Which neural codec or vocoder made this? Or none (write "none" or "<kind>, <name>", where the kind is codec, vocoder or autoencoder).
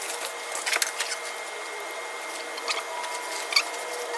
none